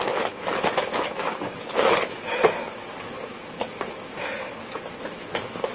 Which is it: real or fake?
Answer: fake